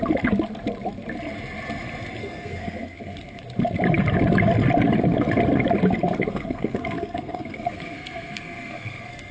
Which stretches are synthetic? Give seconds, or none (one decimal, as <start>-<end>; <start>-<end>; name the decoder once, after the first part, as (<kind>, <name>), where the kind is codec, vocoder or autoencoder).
2.2-3.4 (codec, SNAC); 6.3-9.3